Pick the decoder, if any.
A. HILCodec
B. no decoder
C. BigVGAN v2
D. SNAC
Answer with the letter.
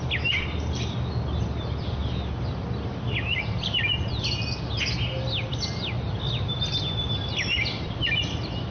B